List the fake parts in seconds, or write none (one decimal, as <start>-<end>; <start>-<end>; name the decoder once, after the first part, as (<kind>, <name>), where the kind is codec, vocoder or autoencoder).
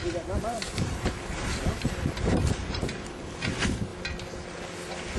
0.0-3.9 (vocoder, BigVGAN v2)